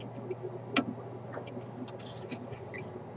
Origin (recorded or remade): recorded